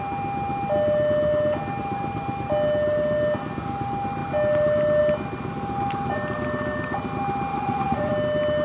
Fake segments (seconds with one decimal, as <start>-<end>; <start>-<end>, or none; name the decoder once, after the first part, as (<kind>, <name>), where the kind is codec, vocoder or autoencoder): 7.5-8.1 (vocoder, Vocos)